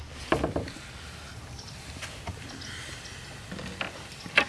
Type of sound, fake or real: real